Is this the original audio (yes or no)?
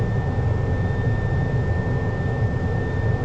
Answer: yes